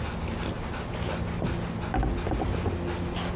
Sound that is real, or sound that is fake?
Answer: real